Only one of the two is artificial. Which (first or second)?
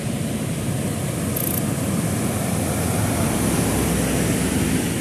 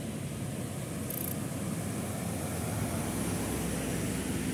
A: first